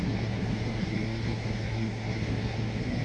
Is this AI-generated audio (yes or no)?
yes